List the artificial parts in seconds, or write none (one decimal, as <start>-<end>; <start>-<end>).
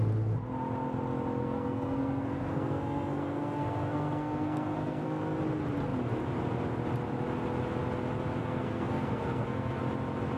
1.4-5.2; 8.4-9.8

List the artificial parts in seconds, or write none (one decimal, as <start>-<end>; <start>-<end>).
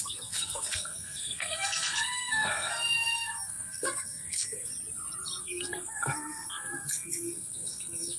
0.0-4.7; 5.4-8.2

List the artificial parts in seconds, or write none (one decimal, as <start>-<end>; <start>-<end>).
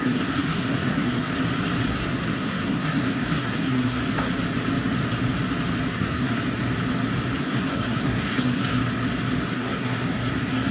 0.0-1.3; 1.8-4.0; 5.9-6.4; 7.4-8.8; 9.5-10.7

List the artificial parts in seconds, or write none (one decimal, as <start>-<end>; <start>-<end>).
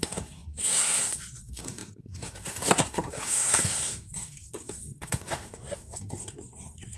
0.0-7.0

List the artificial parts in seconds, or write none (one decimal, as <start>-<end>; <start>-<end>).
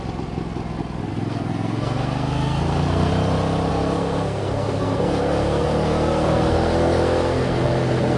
1.1-3.1; 3.7-8.2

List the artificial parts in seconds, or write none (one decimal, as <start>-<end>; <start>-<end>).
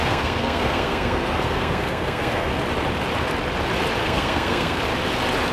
0.0-2.5; 4.0-4.8